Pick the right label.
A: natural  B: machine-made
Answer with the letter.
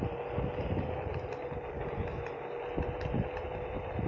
A